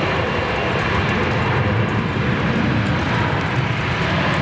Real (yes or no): yes